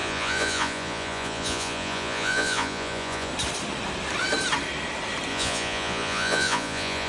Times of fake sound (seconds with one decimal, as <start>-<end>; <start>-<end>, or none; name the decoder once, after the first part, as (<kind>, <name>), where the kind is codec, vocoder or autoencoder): 0.0-3.3 (vocoder, Vocos); 5.3-7.1